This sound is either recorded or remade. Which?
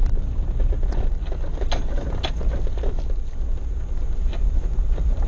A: recorded